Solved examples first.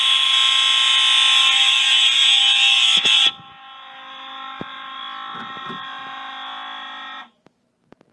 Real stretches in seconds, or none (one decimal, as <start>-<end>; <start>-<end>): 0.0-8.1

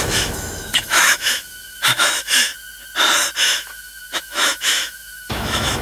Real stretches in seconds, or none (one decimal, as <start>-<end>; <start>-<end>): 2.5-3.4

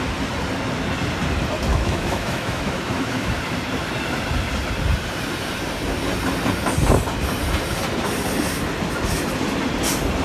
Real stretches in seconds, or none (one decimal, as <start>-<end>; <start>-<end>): 0.0-1.7; 3.4-10.2